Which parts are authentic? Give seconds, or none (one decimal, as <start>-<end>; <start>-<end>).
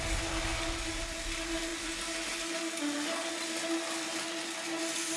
0.0-5.2